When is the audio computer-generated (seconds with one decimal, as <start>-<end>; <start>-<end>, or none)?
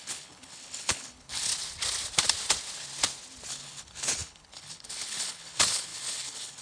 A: 0.0-1.5; 3.5-6.6